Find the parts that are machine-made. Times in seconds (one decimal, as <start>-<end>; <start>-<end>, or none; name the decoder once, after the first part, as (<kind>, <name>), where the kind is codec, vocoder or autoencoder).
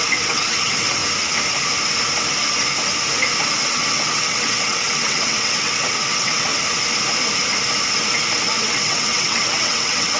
0.0-1.0 (vocoder, WaveNeXt); 3.6-6.5; 8.5-10.2